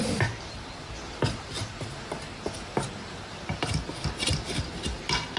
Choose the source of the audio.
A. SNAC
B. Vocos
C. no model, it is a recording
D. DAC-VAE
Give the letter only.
C